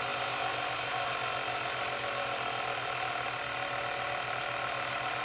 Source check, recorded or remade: recorded